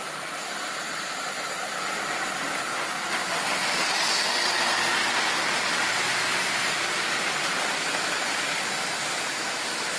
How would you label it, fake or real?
fake